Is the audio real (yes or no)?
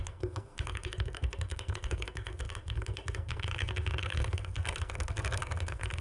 no